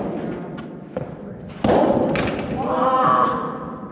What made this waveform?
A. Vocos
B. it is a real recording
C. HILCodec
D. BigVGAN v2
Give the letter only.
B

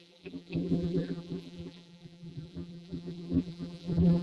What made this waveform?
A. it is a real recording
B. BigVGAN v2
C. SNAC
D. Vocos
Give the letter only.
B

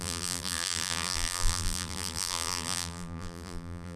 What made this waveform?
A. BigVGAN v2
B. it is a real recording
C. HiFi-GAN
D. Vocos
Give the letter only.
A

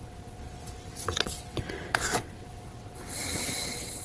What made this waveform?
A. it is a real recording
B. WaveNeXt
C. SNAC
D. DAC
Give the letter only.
B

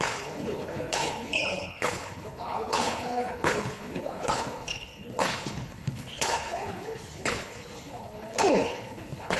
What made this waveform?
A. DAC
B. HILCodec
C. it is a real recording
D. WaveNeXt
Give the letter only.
B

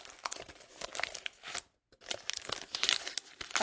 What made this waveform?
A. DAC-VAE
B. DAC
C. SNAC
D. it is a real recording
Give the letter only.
D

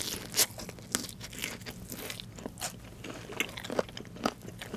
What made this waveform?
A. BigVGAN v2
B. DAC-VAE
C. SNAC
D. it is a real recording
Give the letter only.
D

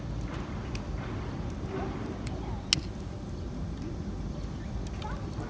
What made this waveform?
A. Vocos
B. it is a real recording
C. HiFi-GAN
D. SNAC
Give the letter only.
B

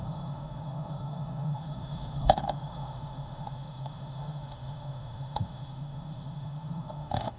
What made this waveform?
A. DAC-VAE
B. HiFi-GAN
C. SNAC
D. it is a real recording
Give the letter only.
A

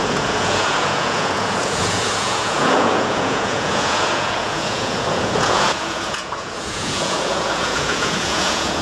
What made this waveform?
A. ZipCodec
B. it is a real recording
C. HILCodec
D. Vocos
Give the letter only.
D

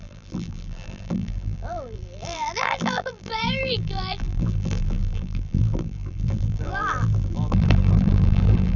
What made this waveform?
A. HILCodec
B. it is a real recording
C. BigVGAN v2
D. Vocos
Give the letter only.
C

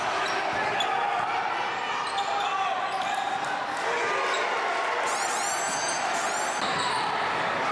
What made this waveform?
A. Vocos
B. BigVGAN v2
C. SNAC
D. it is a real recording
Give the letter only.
D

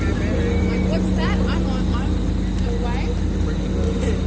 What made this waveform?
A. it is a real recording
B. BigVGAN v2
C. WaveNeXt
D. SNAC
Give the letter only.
A